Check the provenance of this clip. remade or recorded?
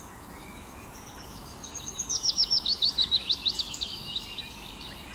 remade